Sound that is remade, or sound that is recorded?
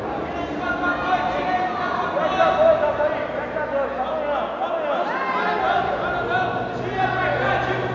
recorded